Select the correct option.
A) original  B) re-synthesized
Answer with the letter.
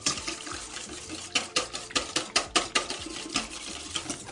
A